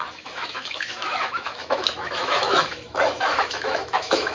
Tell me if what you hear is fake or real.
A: fake